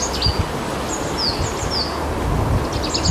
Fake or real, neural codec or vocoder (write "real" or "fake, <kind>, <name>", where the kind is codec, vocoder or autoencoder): real